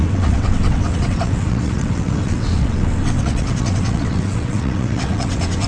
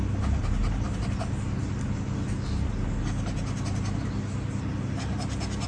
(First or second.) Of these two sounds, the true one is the second